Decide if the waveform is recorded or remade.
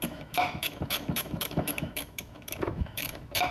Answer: remade